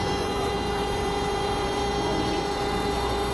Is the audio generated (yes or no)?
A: yes